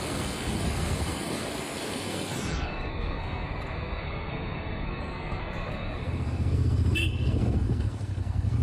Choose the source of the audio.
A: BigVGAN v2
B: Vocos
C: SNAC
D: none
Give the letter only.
C